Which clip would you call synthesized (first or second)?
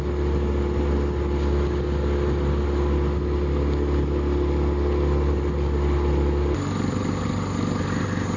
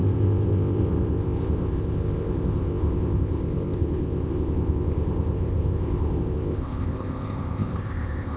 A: second